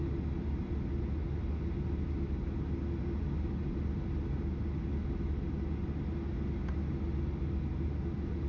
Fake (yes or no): no